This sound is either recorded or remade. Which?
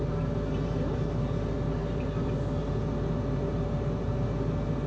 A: recorded